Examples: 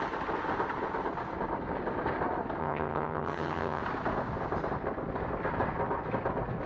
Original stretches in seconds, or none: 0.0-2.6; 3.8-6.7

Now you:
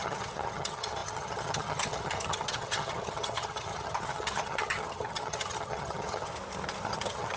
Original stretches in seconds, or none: 6.3-6.8

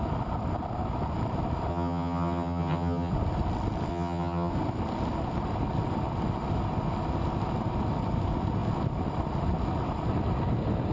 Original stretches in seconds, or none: 0.0-1.7; 3.1-3.9; 4.5-10.9

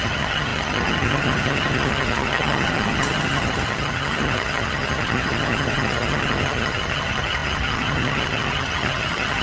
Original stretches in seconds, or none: none